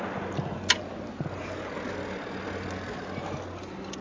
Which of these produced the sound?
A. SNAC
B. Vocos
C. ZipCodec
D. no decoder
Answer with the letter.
D